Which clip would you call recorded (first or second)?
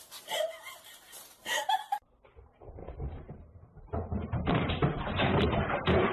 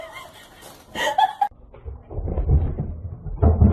second